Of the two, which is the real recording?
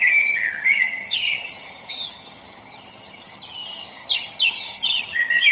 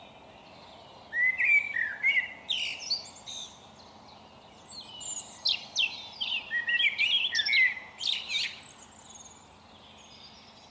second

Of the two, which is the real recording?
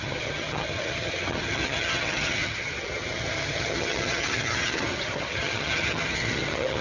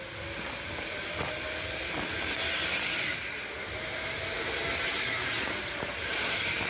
second